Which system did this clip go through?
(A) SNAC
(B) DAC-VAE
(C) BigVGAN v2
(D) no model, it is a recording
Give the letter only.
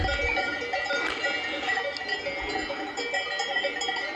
D